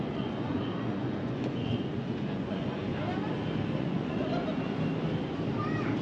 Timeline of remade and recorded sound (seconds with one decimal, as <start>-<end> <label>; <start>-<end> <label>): 0.0-2.9 remade; 2.9-3.8 recorded; 3.8-4.2 remade; 4.2-6.0 recorded